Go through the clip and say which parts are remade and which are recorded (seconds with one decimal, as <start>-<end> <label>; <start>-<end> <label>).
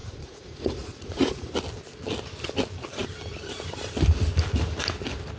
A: 0.0-1.5 remade; 1.5-5.4 recorded